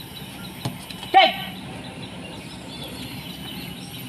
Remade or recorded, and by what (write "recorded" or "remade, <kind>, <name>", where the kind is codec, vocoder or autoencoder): recorded